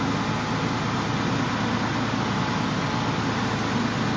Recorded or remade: recorded